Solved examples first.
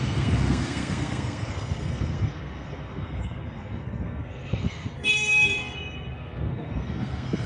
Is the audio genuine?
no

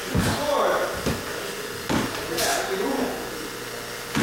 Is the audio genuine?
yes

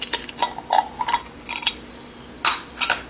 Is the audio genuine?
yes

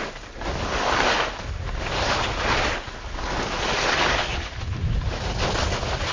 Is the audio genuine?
yes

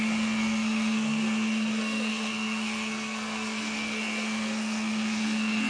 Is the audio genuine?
no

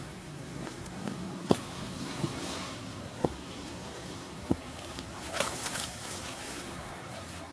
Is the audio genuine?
no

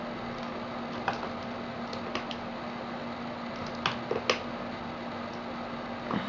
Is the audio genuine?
yes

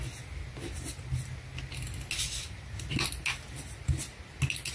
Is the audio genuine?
yes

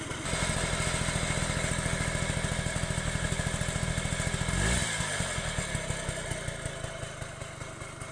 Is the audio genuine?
yes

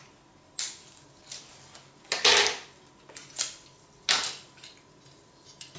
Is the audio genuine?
yes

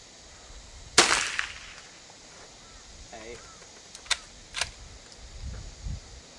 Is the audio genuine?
yes